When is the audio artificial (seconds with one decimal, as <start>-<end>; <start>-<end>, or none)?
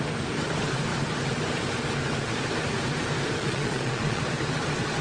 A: 3.4-4.2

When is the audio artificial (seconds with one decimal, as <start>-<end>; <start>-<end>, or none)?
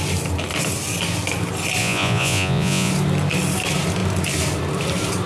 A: 1.8-2.9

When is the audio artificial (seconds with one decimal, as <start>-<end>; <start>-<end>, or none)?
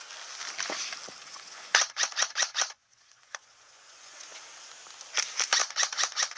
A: 1.2-4.4; 5.6-6.4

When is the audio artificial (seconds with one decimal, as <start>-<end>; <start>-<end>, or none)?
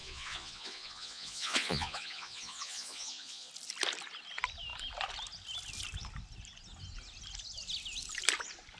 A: 0.0-3.5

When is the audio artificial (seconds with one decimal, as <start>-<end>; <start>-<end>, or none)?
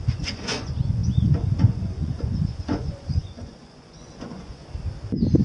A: 0.0-4.6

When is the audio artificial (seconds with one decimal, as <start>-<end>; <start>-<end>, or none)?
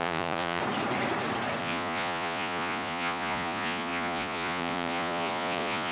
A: 0.0-0.6; 1.6-5.9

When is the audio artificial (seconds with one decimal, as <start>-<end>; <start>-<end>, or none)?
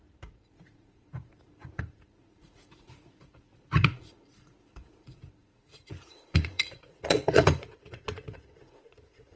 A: 0.0-9.4